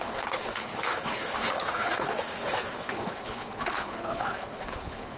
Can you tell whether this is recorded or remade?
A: remade